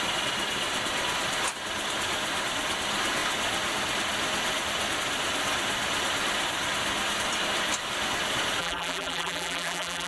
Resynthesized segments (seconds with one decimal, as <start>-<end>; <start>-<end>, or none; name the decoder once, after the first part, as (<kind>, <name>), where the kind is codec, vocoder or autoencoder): 8.6-10.1 (vocoder, BigVGAN v2)